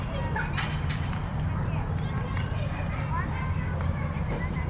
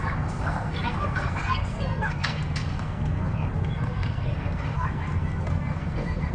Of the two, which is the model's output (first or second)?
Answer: second